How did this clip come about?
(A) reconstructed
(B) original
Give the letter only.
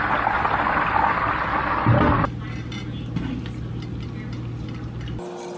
B